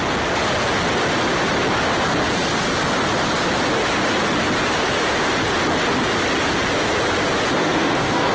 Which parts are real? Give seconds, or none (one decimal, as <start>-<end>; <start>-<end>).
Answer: 0.0-7.6